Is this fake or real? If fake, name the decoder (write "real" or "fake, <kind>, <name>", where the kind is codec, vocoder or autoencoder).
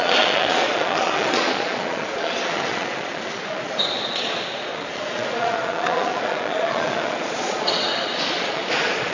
fake, vocoder, Vocos